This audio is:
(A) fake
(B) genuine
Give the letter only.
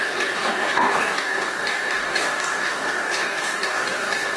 A